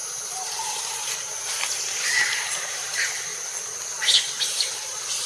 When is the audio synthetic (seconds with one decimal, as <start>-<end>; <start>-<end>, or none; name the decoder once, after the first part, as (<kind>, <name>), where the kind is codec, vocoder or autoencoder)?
0.0-3.3 (vocoder, BigVGAN v2); 4.2-5.3